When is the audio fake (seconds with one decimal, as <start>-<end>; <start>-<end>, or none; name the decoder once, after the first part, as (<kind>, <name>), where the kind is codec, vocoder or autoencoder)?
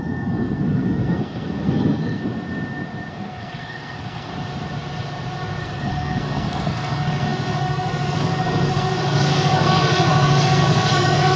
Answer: 0.0-2.2 (codec, SNAC); 3.1-4.3; 5.6-11.4